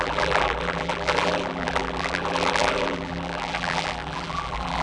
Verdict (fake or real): fake